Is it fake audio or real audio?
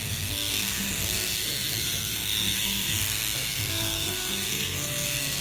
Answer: fake